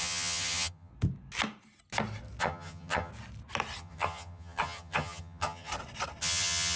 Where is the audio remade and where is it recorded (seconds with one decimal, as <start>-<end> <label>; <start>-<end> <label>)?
0.0-0.9 remade; 0.9-2.4 recorded; 2.4-3.1 remade; 3.1-3.8 recorded; 3.8-5.7 remade; 5.7-6.2 recorded; 6.2-6.8 remade